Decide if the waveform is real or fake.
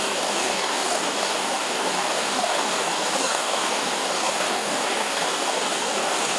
fake